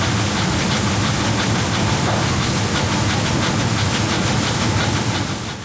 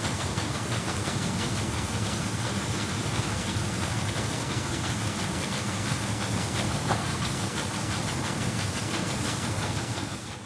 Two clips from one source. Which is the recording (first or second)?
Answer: first